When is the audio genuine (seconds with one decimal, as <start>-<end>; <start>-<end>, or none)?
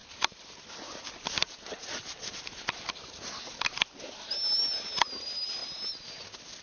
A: 0.0-6.6